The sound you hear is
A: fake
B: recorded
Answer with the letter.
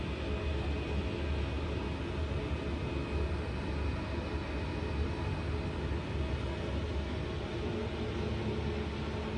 B